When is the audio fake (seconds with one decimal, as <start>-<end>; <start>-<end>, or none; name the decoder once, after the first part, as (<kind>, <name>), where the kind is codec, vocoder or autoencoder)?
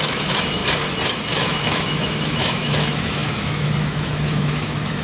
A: 0.0-0.6 (autoencoder, DAC-VAE); 1.3-5.0